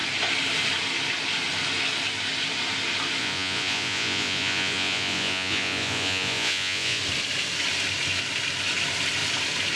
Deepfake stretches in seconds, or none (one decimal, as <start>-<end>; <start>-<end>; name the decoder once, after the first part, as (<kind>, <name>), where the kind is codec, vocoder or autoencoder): 3.2-7.0 (vocoder, Vocos)